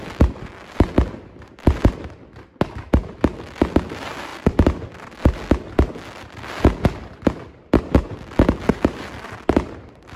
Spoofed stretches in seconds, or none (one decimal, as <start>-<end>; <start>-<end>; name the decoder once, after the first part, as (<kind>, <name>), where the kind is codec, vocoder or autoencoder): none